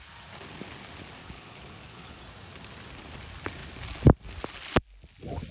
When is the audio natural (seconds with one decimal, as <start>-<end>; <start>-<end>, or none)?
0.0-1.2; 2.2-5.5